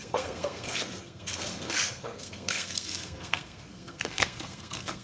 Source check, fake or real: fake